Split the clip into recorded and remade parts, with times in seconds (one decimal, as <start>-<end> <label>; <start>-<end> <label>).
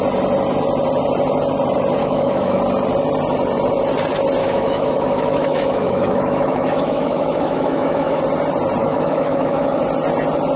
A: 0.0-2.0 recorded; 2.0-2.6 remade; 2.6-4.4 recorded; 4.4-8.2 remade; 8.2-8.8 recorded; 8.8-9.8 remade; 9.8-10.6 recorded